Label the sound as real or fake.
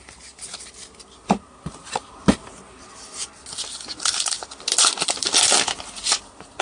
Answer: real